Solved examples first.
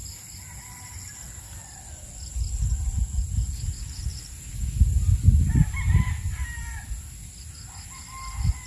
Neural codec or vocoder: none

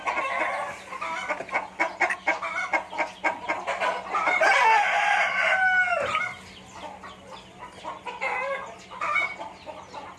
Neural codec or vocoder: none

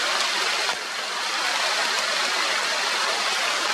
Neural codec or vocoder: none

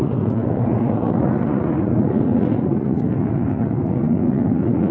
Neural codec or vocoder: vocoder, Vocos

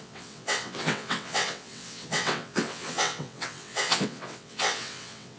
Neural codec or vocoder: vocoder, WaveNeXt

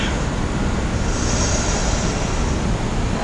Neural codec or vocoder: none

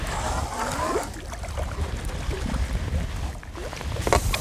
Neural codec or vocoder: none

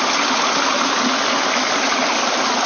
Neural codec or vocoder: none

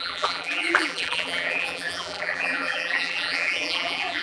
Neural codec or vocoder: vocoder, BigVGAN v2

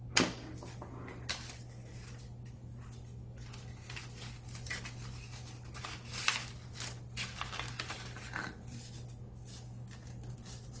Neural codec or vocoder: none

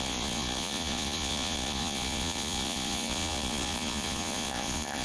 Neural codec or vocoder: vocoder, Vocos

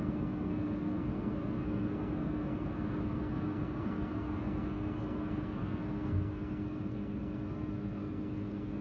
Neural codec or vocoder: codec, SNAC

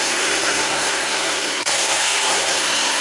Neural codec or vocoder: codec, SNAC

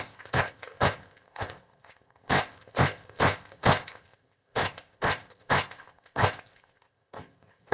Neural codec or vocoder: codec, ZipCodec